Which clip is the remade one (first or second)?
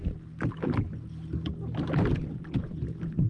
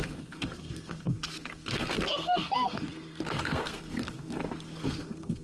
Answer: second